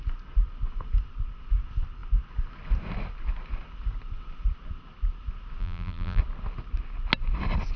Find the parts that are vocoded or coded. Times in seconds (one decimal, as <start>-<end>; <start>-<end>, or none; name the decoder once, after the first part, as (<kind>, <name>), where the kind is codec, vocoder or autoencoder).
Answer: 5.6-6.2 (vocoder, BigVGAN v2)